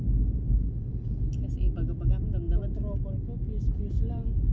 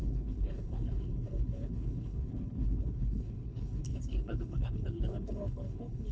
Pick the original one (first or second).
first